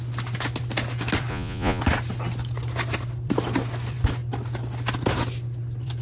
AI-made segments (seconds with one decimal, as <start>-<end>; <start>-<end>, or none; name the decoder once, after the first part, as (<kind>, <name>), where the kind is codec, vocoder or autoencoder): 1.3-1.8 (vocoder, Vocos)

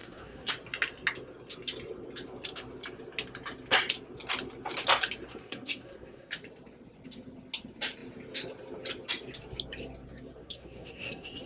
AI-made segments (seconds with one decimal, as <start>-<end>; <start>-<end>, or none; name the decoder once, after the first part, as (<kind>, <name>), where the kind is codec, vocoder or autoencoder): 0.0-0.5 (codec, SNAC); 5.3-6.3; 10.4-11.4

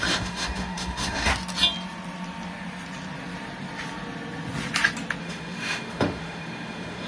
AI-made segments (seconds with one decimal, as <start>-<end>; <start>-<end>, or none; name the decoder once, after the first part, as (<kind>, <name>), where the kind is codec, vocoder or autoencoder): 0.0-1.3 (autoencoder, DAC-VAE); 5.2-7.1

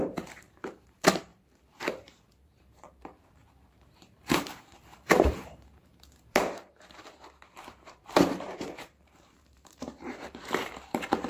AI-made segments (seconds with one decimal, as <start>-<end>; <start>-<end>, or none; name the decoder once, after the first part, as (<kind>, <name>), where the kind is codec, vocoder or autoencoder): 0.0-11.3 (vocoder, BigVGAN v2)

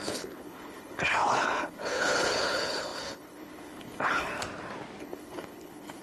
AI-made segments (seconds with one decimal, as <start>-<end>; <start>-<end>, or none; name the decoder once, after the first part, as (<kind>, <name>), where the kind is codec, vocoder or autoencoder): 0.0-4.3 (codec, HILCodec); 5.0-6.0